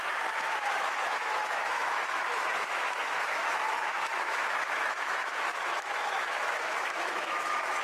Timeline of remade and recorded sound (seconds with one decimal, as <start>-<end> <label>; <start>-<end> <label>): 0.0-7.8 remade